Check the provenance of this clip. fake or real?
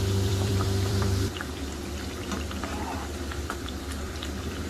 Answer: fake